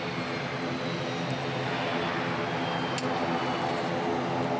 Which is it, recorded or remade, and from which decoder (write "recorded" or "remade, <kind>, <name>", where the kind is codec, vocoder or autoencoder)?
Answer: recorded